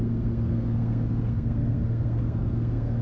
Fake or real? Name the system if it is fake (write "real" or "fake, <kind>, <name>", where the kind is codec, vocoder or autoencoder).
fake, codec, SNAC